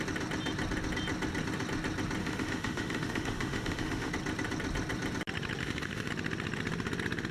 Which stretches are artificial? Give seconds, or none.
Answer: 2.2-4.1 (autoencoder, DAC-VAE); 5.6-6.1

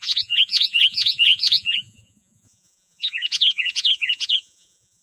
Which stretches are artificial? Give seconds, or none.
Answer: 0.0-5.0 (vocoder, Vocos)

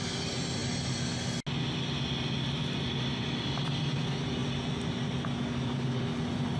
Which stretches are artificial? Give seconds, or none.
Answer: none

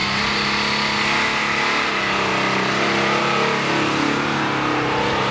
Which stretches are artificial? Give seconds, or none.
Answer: none

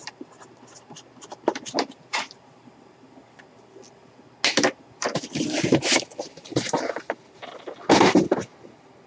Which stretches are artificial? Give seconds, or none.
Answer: none

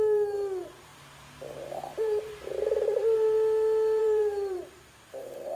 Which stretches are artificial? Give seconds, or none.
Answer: 0.0-0.9 (vocoder, BigVGAN v2); 1.9-2.5; 4.0-5.6

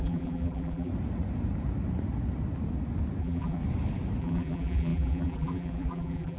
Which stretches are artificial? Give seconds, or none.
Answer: 0.0-0.9 (vocoder, BigVGAN v2); 3.2-3.6; 4.2-6.4

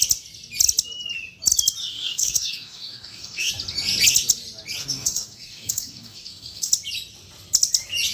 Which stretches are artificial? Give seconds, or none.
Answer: 1.8-3.5 (codec, DAC); 4.8-6.7